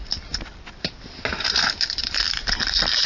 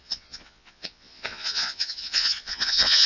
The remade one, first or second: second